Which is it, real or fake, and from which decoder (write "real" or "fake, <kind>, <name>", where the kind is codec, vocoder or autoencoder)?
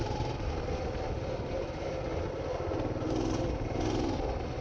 real